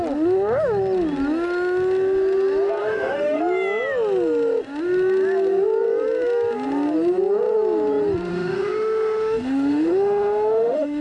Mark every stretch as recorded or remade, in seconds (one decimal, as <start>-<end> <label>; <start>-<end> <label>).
0.0-2.8 recorded; 2.8-3.4 remade; 3.4-8.3 recorded; 8.3-11.0 remade